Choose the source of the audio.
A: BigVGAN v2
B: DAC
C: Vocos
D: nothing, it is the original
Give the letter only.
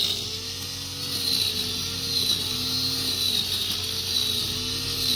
D